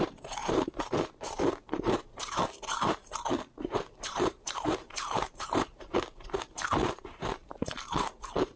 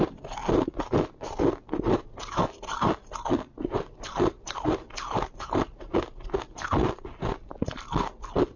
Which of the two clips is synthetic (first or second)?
first